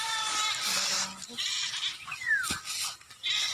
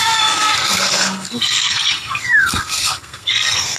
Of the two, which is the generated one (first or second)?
second